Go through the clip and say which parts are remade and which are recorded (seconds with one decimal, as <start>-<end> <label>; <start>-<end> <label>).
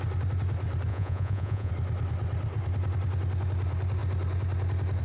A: 0.0-0.9 recorded; 0.9-1.7 remade; 1.7-5.0 recorded